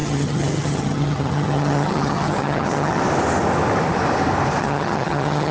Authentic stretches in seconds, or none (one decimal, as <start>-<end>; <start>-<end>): 3.0-4.6